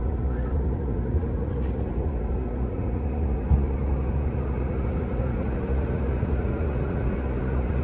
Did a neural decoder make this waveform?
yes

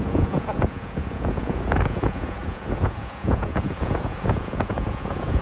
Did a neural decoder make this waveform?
yes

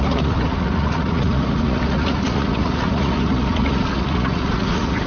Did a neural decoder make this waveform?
yes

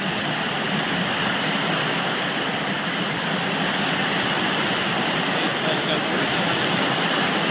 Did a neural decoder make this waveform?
no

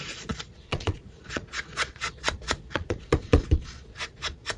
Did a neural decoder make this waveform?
yes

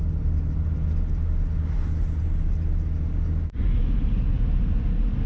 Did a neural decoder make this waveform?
no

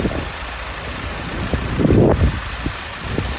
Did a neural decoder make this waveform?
no